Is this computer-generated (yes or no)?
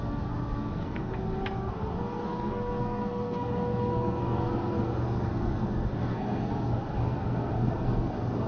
yes